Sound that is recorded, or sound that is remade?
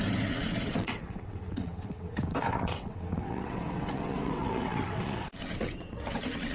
remade